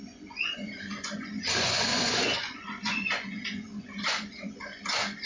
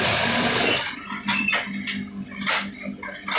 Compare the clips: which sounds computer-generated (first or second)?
first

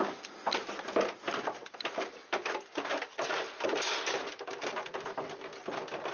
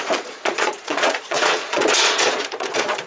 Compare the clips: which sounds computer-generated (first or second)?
second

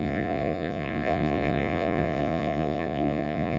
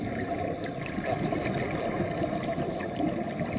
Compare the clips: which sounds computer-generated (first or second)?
first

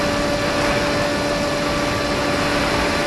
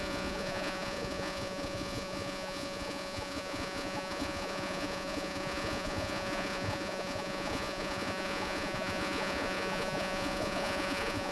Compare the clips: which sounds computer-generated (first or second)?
second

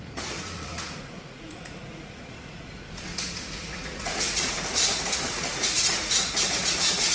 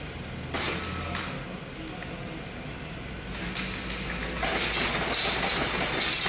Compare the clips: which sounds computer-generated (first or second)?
first